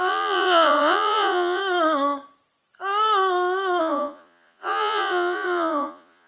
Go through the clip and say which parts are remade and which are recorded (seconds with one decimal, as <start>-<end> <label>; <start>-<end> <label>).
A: 0.0-1.6 remade; 1.6-3.8 recorded; 3.8-6.3 remade